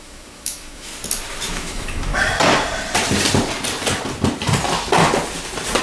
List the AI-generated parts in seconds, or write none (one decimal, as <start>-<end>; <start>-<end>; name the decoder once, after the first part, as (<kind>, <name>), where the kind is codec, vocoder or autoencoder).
0.0-0.9 (autoencoder, DAC-VAE); 1.5-2.1